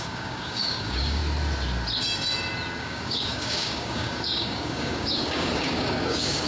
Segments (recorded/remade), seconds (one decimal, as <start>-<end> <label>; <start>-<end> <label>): 0.0-1.2 remade; 1.2-2.8 recorded; 2.8-6.5 remade